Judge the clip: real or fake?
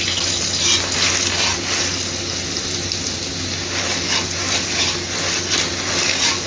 real